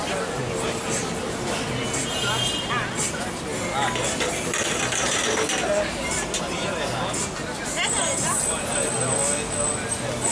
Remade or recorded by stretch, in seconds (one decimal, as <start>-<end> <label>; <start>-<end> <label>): 0.0-10.3 recorded